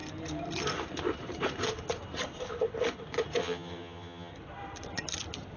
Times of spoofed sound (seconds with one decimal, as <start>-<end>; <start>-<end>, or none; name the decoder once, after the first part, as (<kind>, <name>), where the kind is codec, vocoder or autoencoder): 3.4-4.3 (vocoder, HiFi-GAN)